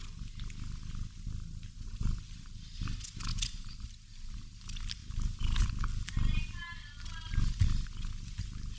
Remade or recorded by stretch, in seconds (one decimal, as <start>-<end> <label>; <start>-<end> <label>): 0.0-3.3 recorded; 3.3-3.9 remade; 3.9-5.0 recorded; 5.0-5.7 remade; 5.7-8.8 recorded